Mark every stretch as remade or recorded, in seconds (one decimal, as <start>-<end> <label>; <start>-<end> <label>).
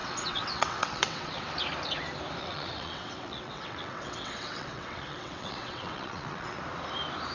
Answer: 0.0-1.4 remade; 1.4-2.4 recorded; 2.4-6.6 remade; 6.6-7.3 recorded